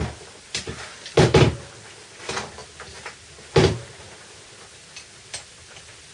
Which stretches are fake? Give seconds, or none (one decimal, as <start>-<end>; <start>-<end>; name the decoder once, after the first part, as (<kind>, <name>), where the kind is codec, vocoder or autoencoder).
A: none